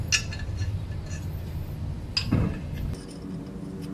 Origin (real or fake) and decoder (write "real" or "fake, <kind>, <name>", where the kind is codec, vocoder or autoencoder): real